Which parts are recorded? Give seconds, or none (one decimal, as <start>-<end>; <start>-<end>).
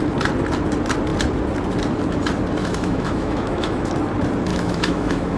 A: 0.0-2.6; 3.9-4.5